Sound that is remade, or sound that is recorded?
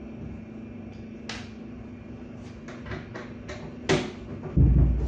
recorded